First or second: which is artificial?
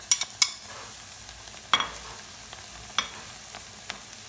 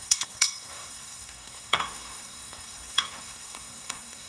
second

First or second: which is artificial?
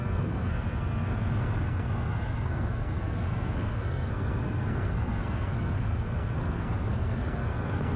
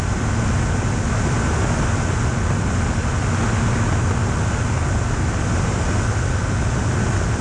first